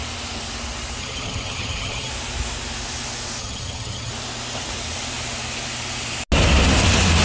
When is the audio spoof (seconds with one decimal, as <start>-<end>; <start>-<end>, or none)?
1.0-2.1; 3.4-4.1

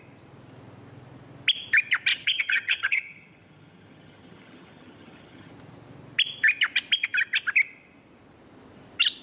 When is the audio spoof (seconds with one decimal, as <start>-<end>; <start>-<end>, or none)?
2.1-5.5

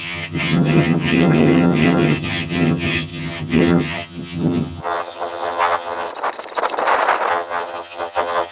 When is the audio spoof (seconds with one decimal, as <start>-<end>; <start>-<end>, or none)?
0.0-6.1; 7.3-8.5

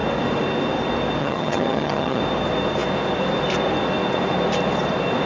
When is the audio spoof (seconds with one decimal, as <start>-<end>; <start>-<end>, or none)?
1.2-2.2

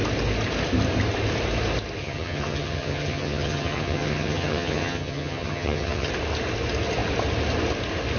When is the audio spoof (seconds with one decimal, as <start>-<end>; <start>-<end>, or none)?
2.0-6.1

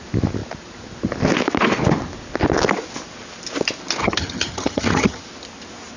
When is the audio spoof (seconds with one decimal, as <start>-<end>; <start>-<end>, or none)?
4.0-5.2